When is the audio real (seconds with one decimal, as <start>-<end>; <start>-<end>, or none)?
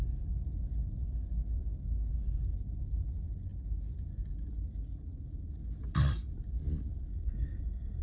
0.0-7.1